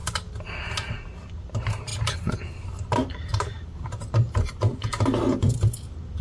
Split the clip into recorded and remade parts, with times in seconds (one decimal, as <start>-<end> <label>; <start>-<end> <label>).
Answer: 0.0-3.3 recorded; 3.3-4.0 remade; 4.0-6.2 recorded